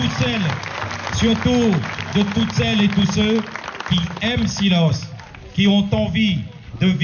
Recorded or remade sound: recorded